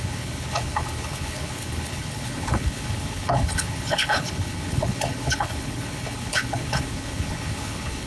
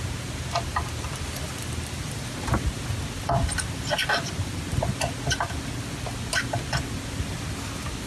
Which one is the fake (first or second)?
first